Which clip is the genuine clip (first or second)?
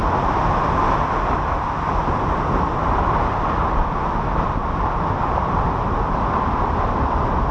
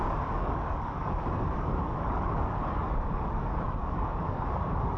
first